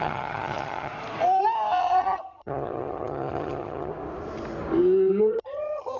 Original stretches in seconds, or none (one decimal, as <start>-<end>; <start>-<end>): 0.9-1.8; 3.9-5.2